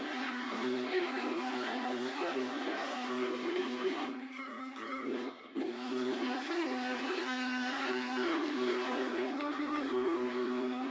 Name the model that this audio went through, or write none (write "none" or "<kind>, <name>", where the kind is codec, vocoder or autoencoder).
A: codec, SNAC